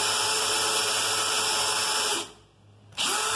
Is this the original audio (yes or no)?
yes